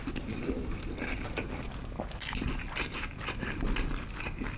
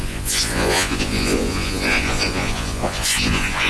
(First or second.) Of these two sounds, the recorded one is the first